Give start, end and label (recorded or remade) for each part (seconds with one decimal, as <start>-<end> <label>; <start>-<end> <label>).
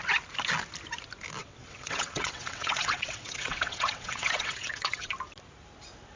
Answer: 0.0-1.4 recorded; 1.4-5.1 remade; 5.1-6.2 recorded